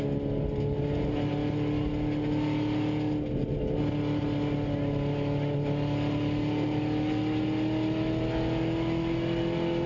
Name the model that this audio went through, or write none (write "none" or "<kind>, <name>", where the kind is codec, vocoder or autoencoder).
none